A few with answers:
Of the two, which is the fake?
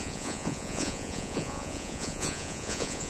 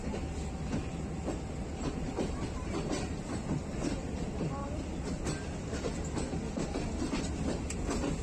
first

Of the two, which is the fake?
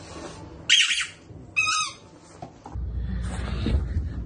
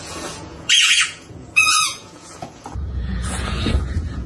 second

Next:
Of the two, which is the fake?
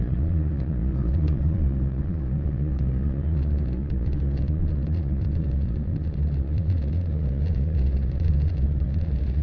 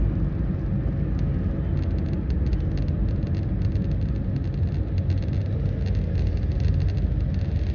first